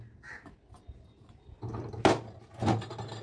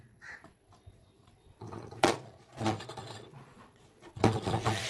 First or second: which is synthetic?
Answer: second